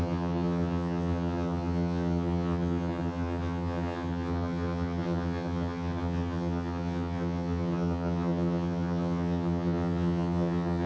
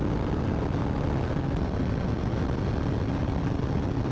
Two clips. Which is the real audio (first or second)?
second